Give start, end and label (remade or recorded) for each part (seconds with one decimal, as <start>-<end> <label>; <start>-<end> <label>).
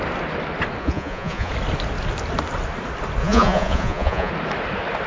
0.0-0.8 recorded; 0.8-1.5 remade; 1.5-3.2 recorded; 3.2-4.3 remade; 4.3-5.1 recorded